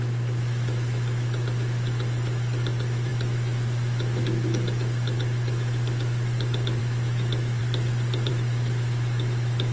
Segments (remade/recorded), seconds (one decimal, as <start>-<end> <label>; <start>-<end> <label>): 0.0-7.6 remade; 7.6-8.3 recorded; 8.3-9.7 remade